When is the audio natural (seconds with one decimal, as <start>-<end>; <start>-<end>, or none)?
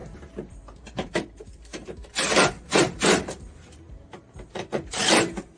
0.0-0.5